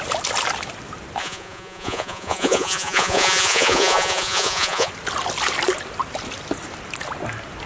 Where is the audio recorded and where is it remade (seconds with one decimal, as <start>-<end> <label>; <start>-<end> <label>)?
0.0-1.2 recorded; 1.2-4.9 remade; 4.9-7.7 recorded

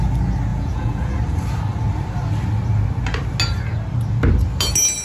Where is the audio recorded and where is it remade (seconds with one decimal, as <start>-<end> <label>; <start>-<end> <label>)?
0.0-0.5 recorded; 0.5-1.1 remade; 1.1-5.0 recorded